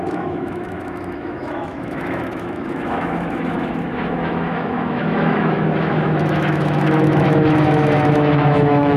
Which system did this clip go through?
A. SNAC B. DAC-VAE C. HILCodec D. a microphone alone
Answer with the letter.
B